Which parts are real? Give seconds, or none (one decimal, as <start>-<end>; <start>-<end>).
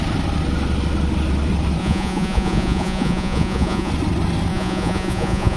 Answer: 0.0-1.8; 3.9-4.5